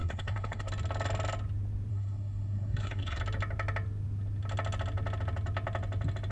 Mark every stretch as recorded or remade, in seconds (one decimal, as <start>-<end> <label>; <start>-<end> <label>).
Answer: 0.0-0.7 remade; 0.7-1.9 recorded; 1.9-3.2 remade; 3.2-6.3 recorded